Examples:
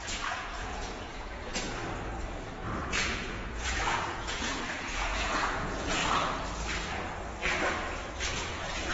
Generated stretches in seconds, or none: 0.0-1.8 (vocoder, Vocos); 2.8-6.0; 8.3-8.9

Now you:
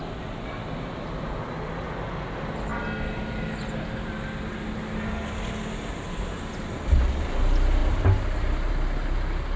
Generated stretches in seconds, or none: none